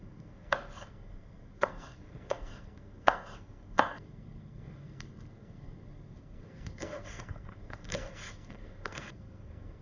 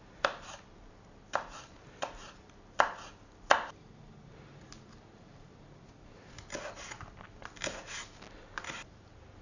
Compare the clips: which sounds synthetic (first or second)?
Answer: first